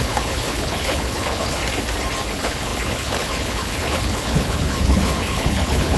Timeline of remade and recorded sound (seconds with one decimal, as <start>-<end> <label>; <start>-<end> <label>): 0.0-1.6 remade; 1.6-2.3 recorded; 2.3-6.0 remade